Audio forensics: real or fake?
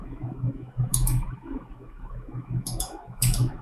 fake